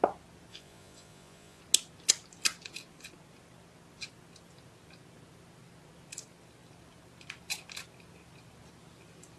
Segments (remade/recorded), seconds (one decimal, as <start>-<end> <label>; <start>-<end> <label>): 0.0-0.5 recorded; 0.5-1.6 remade; 1.6-9.4 recorded